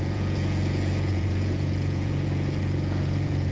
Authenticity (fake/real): fake